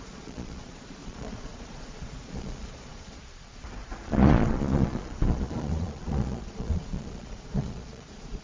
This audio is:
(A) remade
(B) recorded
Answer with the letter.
A